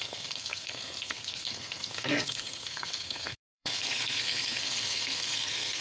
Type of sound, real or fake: fake